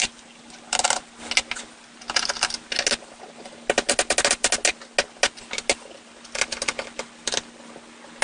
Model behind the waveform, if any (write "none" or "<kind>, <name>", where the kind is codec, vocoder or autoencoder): none